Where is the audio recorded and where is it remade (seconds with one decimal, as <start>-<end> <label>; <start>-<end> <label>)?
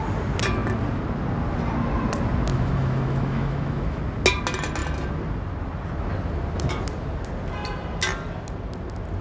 0.0-2.5 recorded; 2.5-4.0 remade; 4.0-9.2 recorded